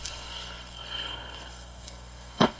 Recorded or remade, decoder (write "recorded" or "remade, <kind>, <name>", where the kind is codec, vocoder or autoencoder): remade, codec, SNAC